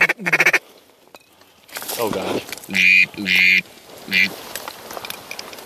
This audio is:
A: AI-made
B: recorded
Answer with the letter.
B